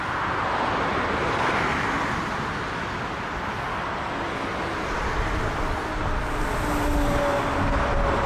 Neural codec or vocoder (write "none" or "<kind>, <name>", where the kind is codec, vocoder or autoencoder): none